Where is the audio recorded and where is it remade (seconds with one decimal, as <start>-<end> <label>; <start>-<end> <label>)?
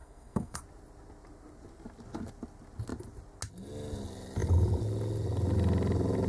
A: 0.0-0.6 remade; 0.6-6.3 recorded